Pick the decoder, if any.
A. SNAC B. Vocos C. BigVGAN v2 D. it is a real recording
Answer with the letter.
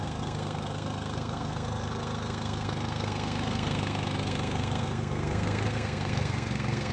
A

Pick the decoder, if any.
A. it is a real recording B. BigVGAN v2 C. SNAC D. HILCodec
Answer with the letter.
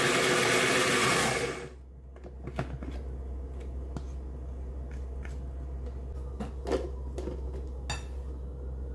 A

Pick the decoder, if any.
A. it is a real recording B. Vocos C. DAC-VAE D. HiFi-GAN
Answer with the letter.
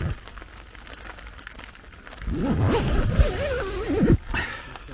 A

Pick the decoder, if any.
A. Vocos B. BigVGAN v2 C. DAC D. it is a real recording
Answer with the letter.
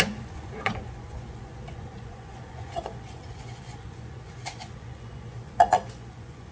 A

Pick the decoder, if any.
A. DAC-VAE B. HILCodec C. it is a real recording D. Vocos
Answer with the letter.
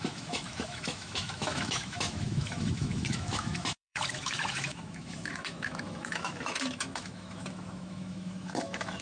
A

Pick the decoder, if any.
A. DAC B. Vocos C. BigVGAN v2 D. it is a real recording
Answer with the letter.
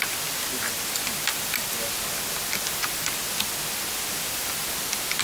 D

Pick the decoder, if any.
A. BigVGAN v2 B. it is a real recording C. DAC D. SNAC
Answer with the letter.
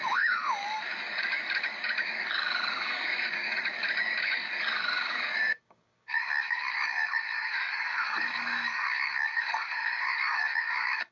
C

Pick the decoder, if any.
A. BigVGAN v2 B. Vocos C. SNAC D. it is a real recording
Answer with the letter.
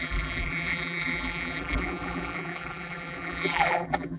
A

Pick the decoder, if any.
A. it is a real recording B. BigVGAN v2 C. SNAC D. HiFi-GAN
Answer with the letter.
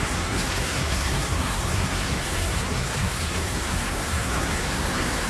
C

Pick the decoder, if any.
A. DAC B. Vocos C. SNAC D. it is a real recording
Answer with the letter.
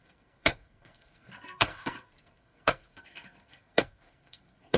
C